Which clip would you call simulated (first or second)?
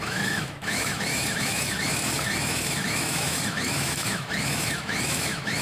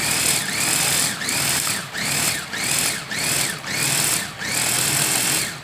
first